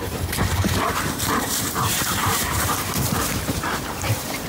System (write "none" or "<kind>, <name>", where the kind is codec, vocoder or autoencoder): vocoder, BigVGAN v2